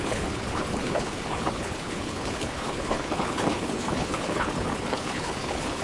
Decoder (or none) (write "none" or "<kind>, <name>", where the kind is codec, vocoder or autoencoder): codec, HILCodec